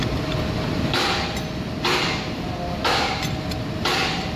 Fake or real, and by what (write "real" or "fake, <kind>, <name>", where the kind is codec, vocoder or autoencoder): real